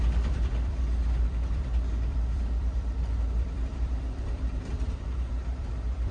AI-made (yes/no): yes